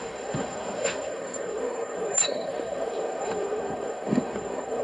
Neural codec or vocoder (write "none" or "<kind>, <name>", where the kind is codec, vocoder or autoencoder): codec, SNAC